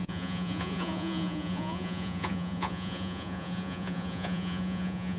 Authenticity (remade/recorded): remade